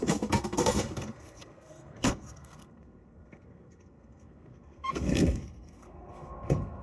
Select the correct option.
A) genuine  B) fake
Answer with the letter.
B